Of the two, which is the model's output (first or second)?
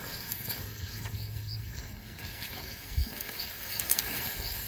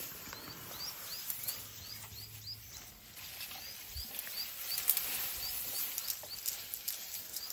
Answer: first